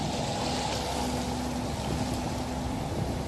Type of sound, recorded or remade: recorded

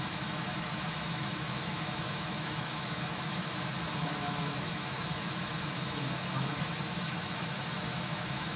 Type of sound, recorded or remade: remade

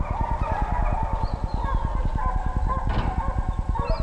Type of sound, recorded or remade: recorded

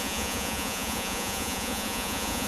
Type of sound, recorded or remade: remade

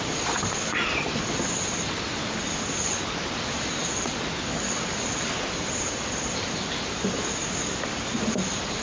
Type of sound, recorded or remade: recorded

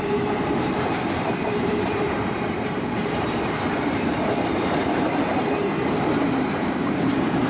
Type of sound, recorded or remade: remade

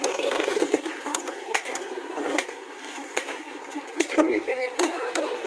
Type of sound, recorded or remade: remade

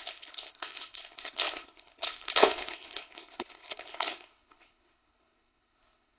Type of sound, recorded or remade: remade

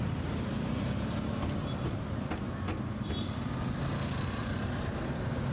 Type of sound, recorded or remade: recorded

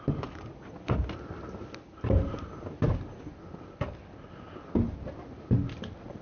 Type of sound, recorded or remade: recorded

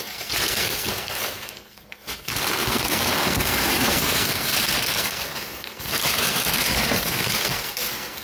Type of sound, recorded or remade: remade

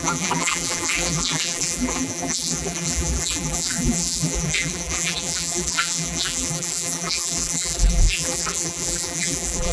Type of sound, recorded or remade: remade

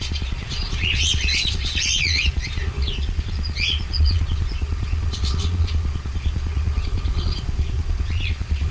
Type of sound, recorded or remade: remade